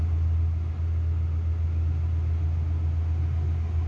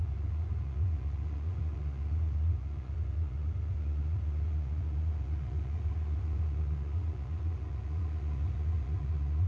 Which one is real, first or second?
first